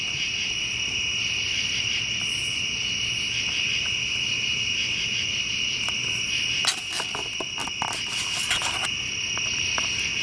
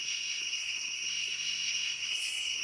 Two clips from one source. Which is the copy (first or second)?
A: second